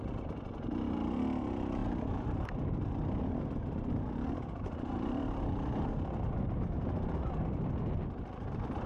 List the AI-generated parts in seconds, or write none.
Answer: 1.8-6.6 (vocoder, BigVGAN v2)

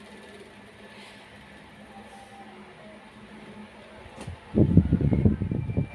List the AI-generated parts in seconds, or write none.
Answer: 3.6-5.4 (vocoder, Vocos)

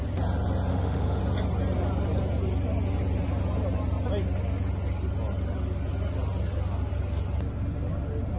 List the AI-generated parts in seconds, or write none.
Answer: 0.7-1.2 (autoencoder, DAC-VAE)

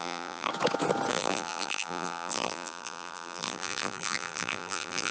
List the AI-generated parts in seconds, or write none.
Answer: 0.0-0.5 (vocoder, BigVGAN v2); 1.1-5.1

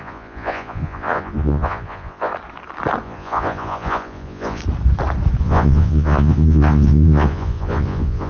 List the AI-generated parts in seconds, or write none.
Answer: 0.0-2.3 (vocoder, Vocos); 3.0-4.6; 5.4-8.3

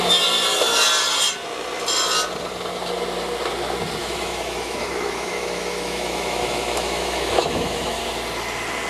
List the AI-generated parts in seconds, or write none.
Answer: 4.0-8.0 (autoencoder, DAC-VAE)

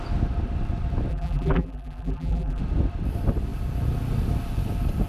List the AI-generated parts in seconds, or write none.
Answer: 1.1-2.6 (vocoder, BigVGAN v2)